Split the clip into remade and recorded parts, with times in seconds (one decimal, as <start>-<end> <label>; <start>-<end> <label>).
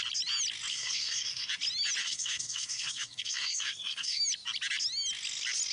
0.0-0.7 recorded; 0.7-1.5 remade; 1.5-2.0 recorded; 2.0-4.2 remade; 4.2-5.7 recorded